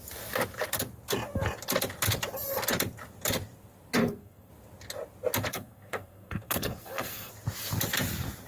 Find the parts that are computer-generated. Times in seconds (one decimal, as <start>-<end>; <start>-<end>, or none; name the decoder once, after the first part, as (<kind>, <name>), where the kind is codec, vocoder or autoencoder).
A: 4.0-4.5 (codec, SNAC); 5.5-7.3